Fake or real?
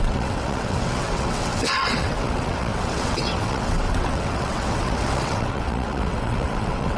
fake